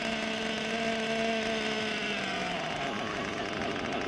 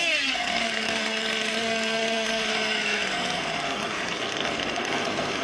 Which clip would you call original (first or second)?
first